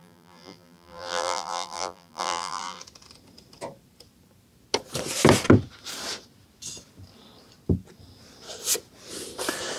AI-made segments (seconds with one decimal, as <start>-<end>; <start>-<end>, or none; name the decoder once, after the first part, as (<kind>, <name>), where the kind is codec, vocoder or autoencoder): 0.0-2.8 (vocoder, BigVGAN v2)